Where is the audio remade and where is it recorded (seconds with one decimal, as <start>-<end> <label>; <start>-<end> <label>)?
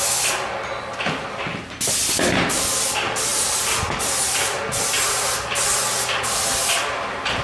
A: 0.0-3.3 recorded; 3.3-4.6 remade; 4.6-7.4 recorded